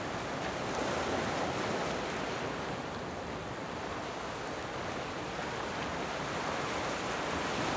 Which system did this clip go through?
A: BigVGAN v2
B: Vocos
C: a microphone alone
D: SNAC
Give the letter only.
C